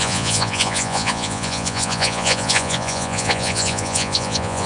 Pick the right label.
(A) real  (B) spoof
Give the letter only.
B